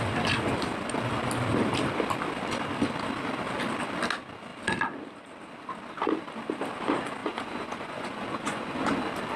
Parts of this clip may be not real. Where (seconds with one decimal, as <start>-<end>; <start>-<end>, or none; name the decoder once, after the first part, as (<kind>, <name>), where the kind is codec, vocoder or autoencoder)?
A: 7.2-9.0 (vocoder, Vocos)